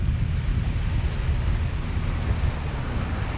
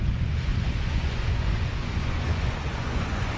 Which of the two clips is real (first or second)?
first